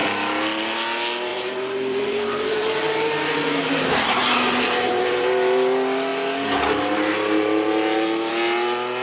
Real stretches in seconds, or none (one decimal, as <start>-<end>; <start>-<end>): 0.0-1.3; 3.8-9.0